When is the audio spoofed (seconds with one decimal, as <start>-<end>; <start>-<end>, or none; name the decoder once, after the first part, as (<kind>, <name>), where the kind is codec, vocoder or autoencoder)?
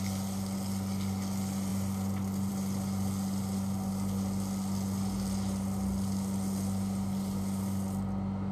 none